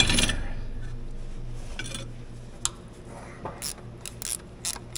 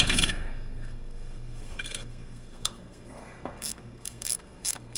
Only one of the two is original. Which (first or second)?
first